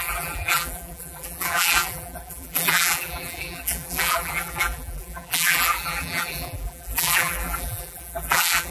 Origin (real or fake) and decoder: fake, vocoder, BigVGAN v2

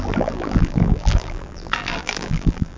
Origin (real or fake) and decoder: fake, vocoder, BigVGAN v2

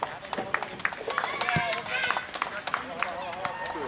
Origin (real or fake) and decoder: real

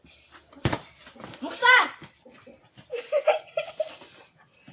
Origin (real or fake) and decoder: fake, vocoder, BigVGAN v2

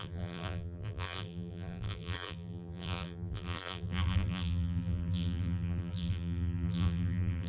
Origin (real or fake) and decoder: fake, vocoder, BigVGAN v2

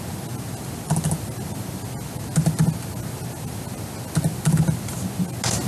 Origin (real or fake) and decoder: real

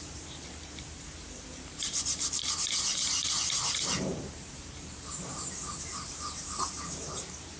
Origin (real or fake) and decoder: fake, vocoder, BigVGAN v2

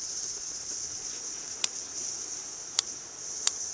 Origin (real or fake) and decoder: fake, vocoder, BigVGAN v2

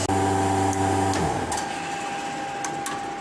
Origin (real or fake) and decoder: real